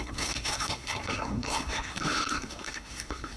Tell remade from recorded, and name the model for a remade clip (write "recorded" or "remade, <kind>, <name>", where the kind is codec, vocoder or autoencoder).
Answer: remade, codec, SNAC